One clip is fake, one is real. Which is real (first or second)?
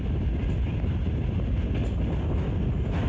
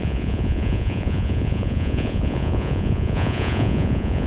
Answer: first